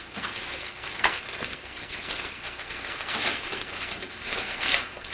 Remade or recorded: remade